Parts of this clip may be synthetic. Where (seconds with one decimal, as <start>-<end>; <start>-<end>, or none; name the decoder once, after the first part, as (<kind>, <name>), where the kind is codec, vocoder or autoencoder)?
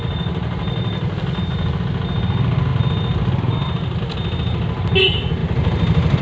none